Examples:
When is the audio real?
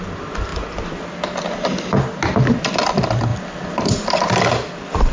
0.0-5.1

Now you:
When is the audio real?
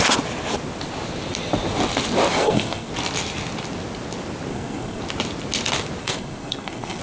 0.0-2.3; 2.9-4.5; 5.0-6.0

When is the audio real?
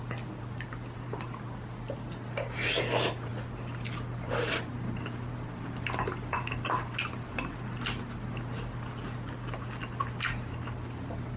0.0-11.4